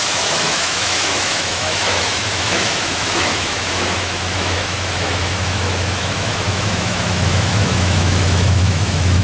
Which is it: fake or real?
fake